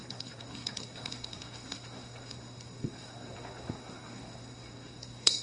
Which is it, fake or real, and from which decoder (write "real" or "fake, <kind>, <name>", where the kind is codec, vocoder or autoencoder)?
fake, codec, SNAC